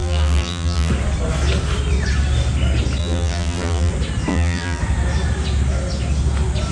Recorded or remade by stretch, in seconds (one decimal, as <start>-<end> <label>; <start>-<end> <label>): 0.0-0.9 remade; 0.9-3.0 recorded; 3.0-3.9 remade; 3.9-4.3 recorded; 4.3-4.8 remade; 4.8-6.7 recorded